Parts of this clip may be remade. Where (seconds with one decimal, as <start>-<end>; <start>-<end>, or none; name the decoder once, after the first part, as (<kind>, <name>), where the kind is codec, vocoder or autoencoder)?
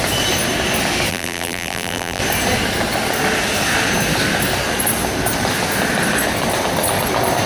1.1-2.2 (vocoder, BigVGAN v2)